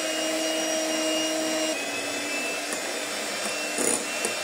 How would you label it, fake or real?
real